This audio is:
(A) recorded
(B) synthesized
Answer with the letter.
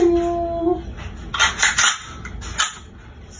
A